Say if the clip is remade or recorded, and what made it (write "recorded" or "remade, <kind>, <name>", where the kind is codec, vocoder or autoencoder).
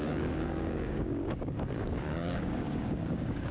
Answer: remade, codec, DAC